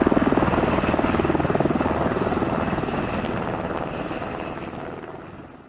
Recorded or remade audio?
recorded